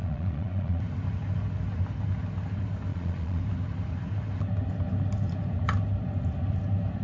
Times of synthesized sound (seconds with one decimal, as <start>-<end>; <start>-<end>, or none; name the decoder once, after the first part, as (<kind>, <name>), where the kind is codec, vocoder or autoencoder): 0.0-0.8 (vocoder, Vocos); 2.9-3.4